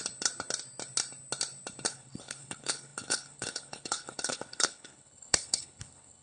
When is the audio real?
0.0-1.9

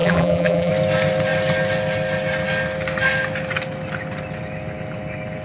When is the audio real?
0.7-5.4

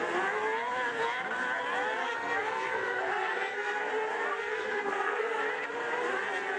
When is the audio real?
0.0-2.0; 3.9-4.3; 5.4-6.6

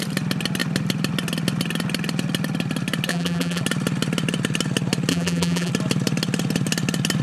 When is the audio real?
0.0-3.1; 3.6-5.1; 5.7-7.2

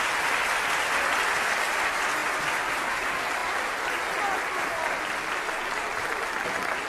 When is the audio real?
0.0-6.9

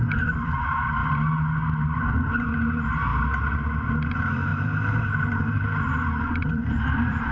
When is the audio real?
1.0-1.8; 3.1-3.9